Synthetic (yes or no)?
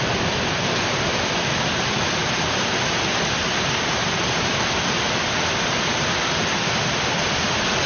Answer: no